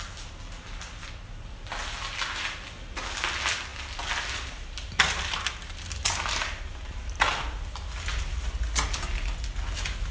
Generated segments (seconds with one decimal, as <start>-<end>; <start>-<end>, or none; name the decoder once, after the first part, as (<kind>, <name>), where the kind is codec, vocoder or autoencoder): none